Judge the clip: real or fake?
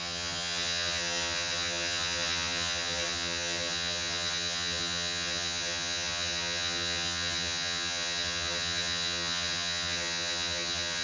fake